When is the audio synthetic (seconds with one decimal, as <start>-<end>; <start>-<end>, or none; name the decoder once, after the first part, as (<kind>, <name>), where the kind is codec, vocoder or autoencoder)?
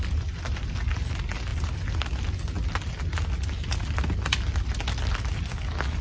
none